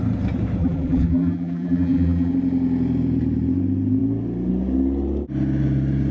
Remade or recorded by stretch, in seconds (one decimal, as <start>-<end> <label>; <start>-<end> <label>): 0.0-0.6 recorded; 0.6-2.3 remade; 2.3-6.1 recorded